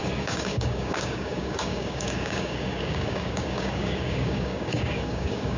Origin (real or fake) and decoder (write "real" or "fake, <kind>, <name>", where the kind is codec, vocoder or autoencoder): fake, codec, DAC